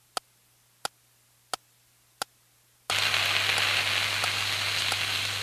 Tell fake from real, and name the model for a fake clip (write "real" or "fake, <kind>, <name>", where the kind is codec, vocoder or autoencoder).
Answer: real